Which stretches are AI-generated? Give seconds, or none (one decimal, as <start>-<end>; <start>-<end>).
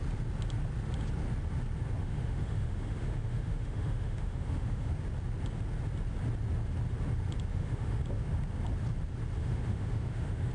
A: 2.0-4.9; 7.5-8.0; 9.4-10.5